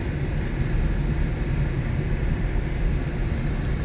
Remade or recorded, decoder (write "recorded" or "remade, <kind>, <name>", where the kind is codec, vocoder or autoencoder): recorded